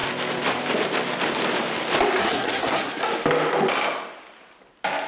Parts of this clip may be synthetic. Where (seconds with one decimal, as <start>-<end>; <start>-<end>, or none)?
2.2-3.0